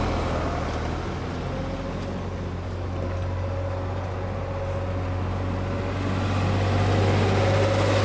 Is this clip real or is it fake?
real